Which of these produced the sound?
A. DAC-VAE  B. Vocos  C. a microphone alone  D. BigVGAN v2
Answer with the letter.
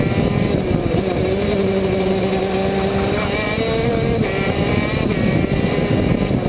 C